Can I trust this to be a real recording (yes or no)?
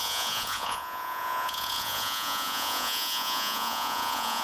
no